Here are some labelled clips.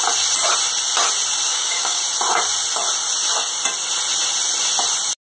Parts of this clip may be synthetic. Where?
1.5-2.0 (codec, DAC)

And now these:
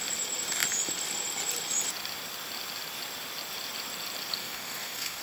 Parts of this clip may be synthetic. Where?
4.4-5.2 (codec, DAC)

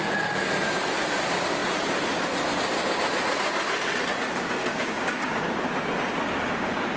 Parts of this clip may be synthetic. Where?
4.6-5.7 (codec, DAC); 6.3-7.0

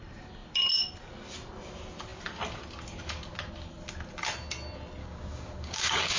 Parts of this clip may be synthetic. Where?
5.0-6.2 (codec, DAC)

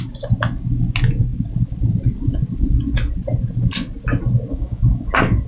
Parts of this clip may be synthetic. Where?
4.5-5.1 (codec, DAC)

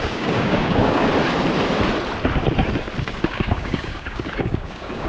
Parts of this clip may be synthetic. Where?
0.0-1.1 (codec, DAC); 3.0-5.1